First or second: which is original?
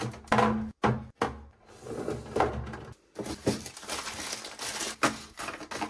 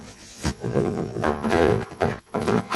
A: first